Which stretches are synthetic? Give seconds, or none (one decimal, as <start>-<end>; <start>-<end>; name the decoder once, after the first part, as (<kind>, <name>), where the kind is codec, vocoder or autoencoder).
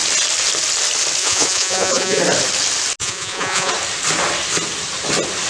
1.2-2.2 (vocoder, Vocos); 3.0-3.7